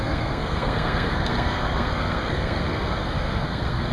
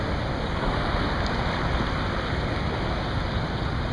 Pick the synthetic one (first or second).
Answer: first